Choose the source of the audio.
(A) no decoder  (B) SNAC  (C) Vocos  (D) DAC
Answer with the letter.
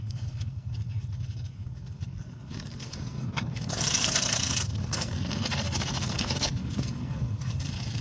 B